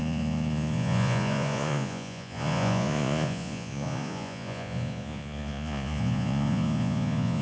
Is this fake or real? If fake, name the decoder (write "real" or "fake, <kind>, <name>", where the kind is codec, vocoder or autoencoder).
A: fake, vocoder, Vocos